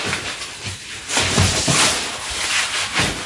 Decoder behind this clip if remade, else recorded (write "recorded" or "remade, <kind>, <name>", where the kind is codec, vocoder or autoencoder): recorded